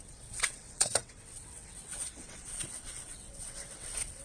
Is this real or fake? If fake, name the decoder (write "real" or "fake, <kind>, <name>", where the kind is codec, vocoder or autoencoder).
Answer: fake, vocoder, WaveNeXt